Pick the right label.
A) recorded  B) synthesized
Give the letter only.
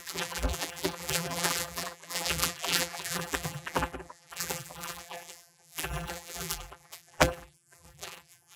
B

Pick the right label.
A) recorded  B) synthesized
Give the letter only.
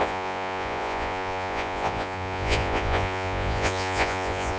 B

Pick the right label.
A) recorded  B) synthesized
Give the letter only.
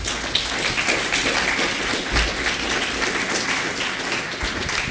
A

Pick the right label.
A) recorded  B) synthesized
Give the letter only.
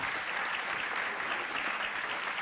A